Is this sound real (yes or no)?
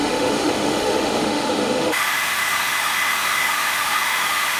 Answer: no